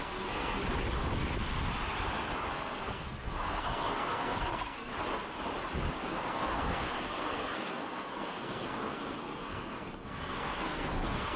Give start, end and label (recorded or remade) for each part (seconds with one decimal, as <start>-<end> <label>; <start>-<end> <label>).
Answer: 0.0-0.6 remade; 0.6-2.5 recorded; 2.5-4.9 remade; 4.9-5.9 recorded; 5.9-11.4 remade